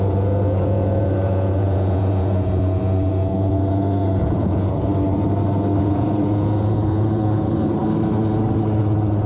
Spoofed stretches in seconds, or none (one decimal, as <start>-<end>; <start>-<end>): 0.0-4.9; 5.8-7.8; 8.8-9.3